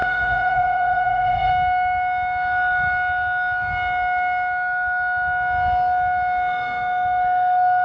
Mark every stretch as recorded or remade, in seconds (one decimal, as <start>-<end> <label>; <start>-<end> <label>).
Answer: 0.0-1.5 remade; 1.5-7.8 recorded